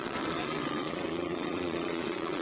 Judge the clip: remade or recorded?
remade